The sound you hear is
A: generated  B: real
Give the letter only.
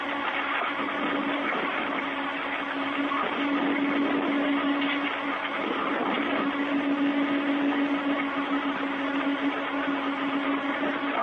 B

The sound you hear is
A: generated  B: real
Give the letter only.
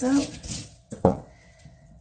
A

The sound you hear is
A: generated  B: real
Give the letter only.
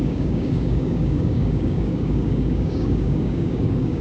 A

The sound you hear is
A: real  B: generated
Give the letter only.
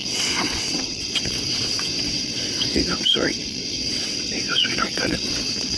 B